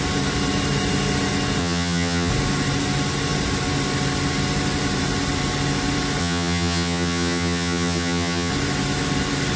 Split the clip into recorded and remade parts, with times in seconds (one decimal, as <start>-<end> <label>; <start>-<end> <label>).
0.0-1.6 recorded; 1.6-2.3 remade; 2.3-6.2 recorded; 6.2-8.5 remade; 8.5-9.6 recorded